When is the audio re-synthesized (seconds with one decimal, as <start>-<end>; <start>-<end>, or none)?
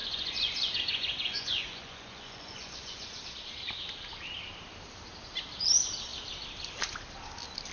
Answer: 0.0-3.2